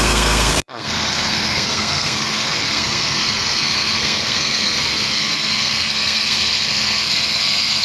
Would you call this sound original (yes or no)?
no